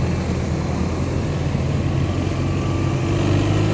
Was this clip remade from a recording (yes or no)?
no